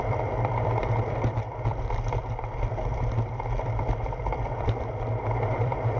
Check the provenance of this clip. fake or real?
fake